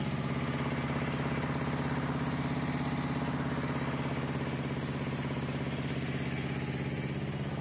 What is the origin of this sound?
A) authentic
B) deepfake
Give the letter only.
A